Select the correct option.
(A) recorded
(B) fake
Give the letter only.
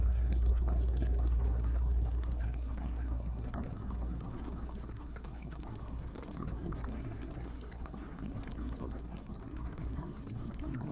B